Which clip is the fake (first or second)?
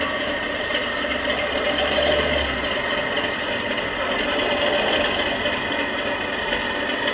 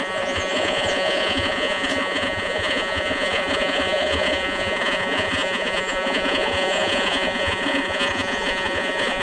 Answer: second